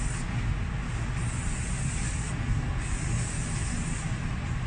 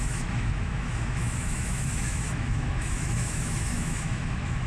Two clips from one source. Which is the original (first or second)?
first